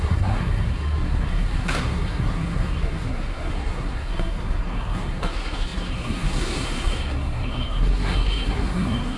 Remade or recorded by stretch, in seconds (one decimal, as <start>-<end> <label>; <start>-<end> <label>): 0.0-9.2 remade